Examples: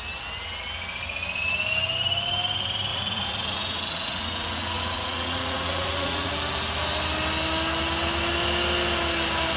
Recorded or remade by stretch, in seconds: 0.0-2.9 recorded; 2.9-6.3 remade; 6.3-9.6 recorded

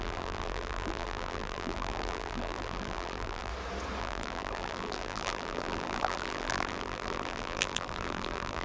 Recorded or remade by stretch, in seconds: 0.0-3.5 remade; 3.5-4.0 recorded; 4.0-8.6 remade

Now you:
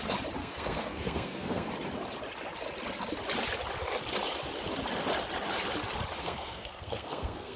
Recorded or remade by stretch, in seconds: 0.0-0.4 recorded; 0.4-1.7 remade; 1.7-6.2 recorded; 6.2-7.6 remade